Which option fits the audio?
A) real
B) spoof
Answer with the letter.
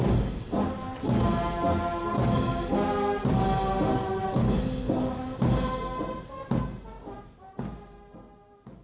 A